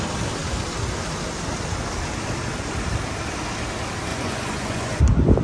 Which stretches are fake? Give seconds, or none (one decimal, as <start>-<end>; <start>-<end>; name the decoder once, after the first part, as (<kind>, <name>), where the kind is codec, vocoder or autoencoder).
4.1-5.0 (vocoder, Vocos)